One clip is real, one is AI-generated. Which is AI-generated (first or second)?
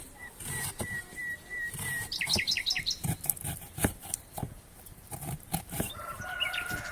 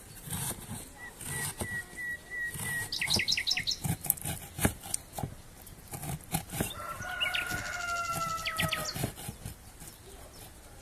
first